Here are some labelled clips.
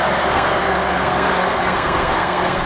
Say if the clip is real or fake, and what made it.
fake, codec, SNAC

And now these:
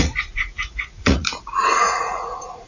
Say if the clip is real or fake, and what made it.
fake, vocoder, Vocos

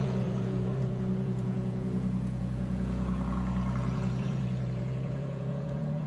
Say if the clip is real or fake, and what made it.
fake, vocoder, Vocos